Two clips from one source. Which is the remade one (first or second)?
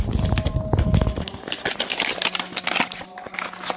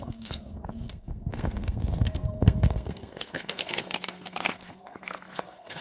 second